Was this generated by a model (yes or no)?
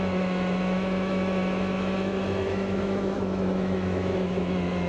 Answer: yes